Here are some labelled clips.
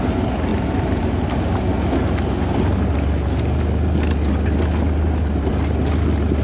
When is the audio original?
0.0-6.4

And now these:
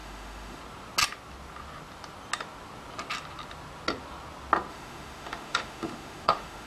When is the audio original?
0.6-4.7

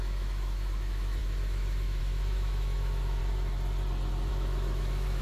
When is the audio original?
3.2-4.3